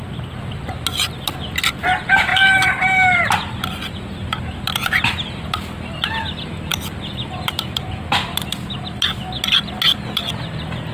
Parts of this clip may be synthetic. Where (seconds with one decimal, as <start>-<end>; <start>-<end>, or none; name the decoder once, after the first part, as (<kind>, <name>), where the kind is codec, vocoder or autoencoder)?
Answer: none